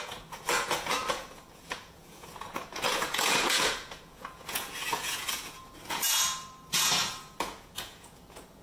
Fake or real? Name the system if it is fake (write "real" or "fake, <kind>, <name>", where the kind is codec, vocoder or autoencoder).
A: fake, vocoder, Vocos